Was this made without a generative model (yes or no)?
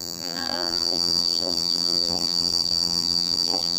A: no